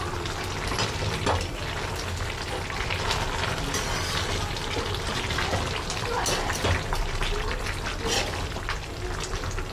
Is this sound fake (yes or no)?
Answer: no